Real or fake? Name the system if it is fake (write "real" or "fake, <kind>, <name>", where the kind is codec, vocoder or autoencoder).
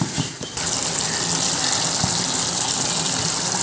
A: real